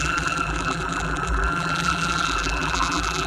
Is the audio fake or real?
fake